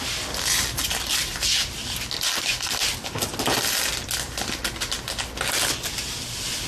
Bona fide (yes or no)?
yes